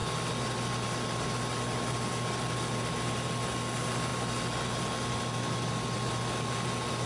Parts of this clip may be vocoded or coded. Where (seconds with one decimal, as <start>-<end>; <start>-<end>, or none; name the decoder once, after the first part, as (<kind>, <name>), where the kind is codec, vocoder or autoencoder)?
none